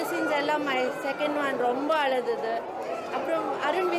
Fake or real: real